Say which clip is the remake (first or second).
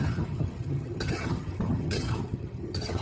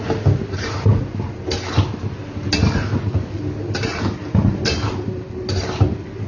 first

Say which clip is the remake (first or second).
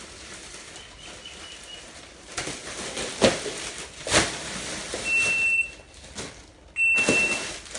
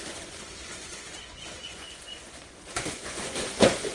second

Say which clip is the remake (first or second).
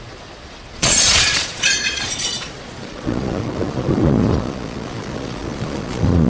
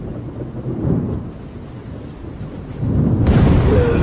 first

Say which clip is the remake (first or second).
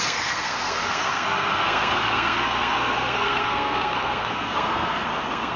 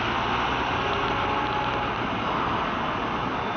first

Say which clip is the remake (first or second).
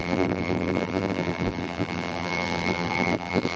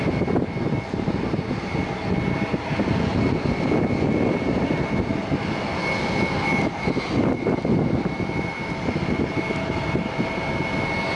first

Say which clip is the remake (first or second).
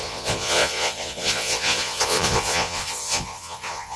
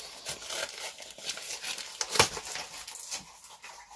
first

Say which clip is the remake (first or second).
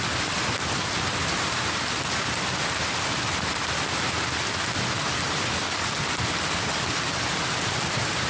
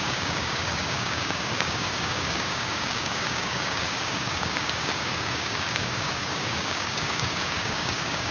second